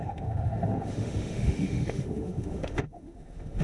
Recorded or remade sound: remade